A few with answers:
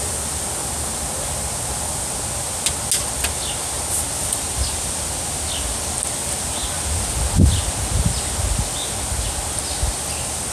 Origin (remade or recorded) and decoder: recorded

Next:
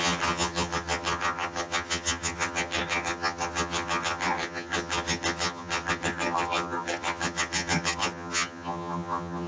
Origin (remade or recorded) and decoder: remade, vocoder, HiFi-GAN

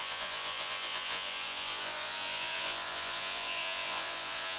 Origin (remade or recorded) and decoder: remade, vocoder, Vocos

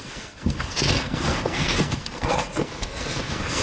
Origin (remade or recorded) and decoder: remade, codec, SNAC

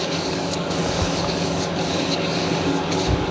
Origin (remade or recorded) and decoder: remade, codec, DAC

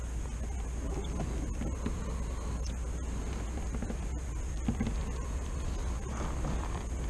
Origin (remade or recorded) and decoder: recorded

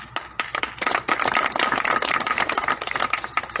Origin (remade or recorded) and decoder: recorded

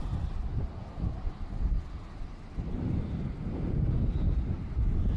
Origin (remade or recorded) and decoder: recorded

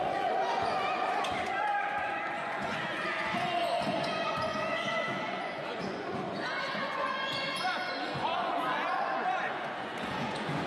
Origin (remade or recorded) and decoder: remade, vocoder, Vocos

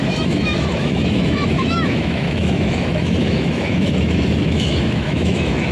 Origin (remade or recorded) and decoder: remade, autoencoder, DAC-VAE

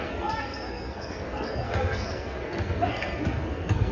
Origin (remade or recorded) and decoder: remade, codec, SNAC